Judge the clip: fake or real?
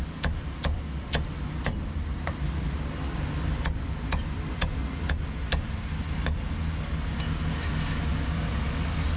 real